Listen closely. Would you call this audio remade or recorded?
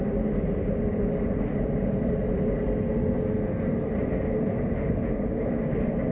recorded